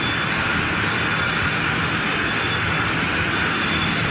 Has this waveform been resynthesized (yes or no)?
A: no